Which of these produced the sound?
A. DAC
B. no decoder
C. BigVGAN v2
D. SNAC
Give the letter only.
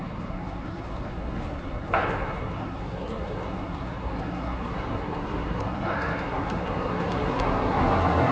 D